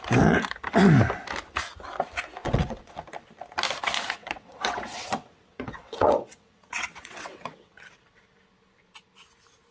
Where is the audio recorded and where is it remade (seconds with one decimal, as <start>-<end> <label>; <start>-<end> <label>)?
0.0-2.4 recorded; 2.4-2.9 remade; 2.9-4.2 recorded; 4.2-7.7 remade; 7.7-9.7 recorded